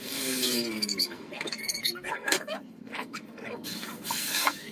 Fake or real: fake